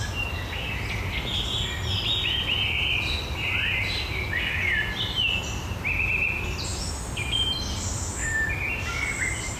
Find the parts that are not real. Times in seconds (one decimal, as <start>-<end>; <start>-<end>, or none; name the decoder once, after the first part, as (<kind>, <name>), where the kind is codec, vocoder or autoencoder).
none

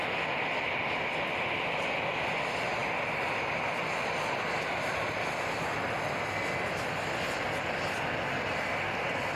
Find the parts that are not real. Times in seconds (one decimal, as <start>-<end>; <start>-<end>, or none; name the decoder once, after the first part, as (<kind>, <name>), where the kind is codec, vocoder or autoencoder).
none